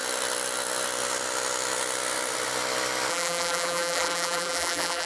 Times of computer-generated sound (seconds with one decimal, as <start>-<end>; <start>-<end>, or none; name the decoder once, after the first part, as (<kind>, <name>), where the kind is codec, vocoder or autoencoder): 3.1-5.1 (vocoder, BigVGAN v2)